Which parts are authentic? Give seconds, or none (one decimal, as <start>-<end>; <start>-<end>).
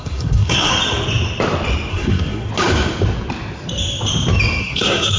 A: 0.7-1.9; 2.5-4.6